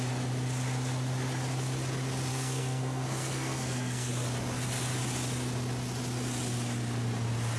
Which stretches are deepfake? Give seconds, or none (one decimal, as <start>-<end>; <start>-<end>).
2.3-4.1